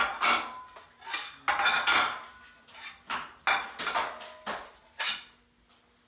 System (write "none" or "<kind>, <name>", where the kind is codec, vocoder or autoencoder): none